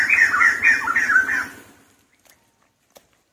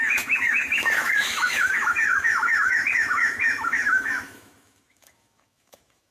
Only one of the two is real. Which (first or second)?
first